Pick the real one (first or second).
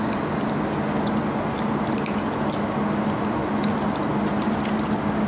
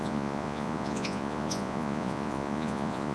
first